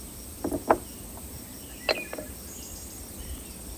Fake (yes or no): no